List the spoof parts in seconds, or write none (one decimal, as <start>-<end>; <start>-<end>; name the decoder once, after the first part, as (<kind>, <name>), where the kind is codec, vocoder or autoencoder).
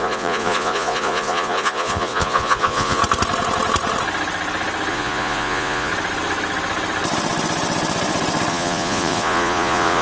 0.0-3.0 (vocoder, Vocos); 4.9-5.9; 8.5-10.0